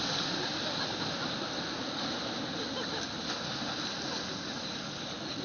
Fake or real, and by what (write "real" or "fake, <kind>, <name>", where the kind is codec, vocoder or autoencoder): real